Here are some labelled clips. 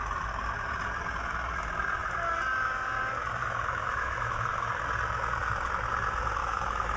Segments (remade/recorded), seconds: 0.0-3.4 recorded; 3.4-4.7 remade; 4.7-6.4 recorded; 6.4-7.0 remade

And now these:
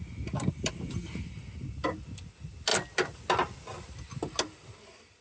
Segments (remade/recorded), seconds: 0.0-5.2 recorded

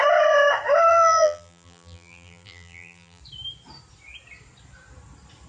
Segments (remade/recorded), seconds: 0.0-0.9 recorded; 0.9-3.2 remade; 3.2-5.5 recorded

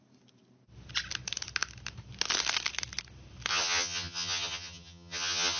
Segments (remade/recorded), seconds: 0.0-3.5 recorded; 3.5-5.6 remade

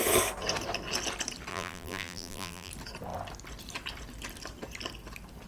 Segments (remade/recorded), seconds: 0.0-1.5 recorded; 1.5-2.7 remade; 2.7-5.5 recorded

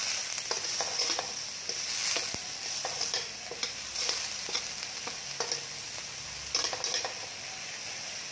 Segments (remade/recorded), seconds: 0.0-0.6 recorded; 0.6-1.2 remade; 1.2-8.3 recorded